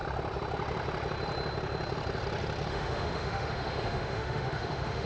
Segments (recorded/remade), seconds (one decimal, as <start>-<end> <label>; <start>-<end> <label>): 0.0-2.7 recorded; 2.7-5.1 remade